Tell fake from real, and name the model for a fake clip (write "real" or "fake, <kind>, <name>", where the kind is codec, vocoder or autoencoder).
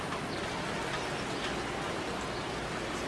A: real